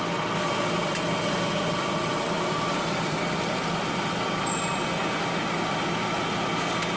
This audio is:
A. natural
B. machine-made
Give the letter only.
A